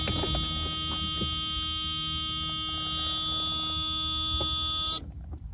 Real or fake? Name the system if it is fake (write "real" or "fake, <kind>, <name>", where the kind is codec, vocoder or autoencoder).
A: real